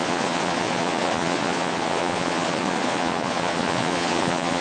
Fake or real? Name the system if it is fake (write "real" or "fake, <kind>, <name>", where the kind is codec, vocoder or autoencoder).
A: fake, vocoder, Vocos